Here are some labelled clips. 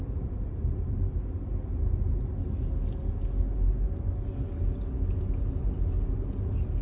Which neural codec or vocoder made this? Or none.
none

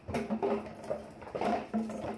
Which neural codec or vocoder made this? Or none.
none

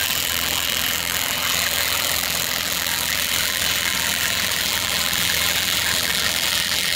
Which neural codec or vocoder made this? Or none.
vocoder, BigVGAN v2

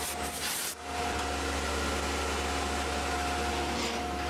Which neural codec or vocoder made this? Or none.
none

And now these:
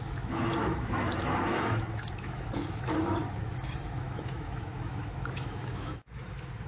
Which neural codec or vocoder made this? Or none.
autoencoder, DAC-VAE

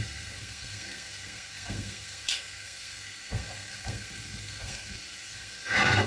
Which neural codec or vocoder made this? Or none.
codec, SNAC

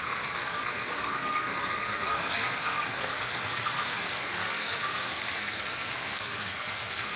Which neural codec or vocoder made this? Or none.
codec, SNAC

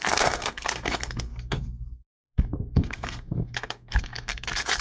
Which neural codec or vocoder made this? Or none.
codec, SNAC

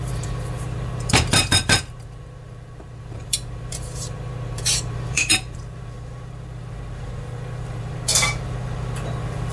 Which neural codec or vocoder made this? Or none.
vocoder, BigVGAN v2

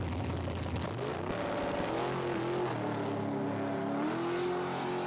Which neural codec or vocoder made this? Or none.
none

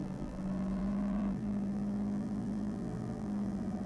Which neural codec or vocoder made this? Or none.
vocoder, BigVGAN v2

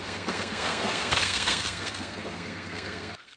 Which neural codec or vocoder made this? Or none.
codec, SNAC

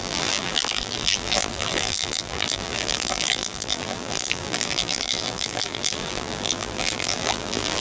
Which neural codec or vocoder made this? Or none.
vocoder, BigVGAN v2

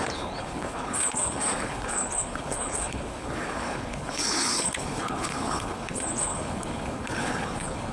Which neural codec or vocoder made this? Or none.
codec, HILCodec